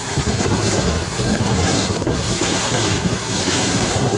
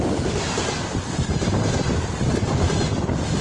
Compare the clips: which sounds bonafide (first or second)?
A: second